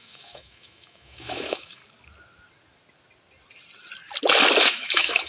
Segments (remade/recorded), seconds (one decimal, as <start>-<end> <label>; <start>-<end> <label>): 0.0-1.8 remade; 1.8-4.7 recorded; 4.7-5.3 remade